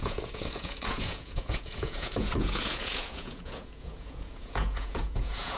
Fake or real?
fake